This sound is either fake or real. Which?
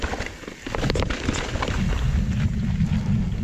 real